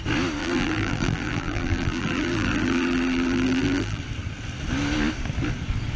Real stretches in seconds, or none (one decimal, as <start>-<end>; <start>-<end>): 0.0-0.4; 4.0-6.0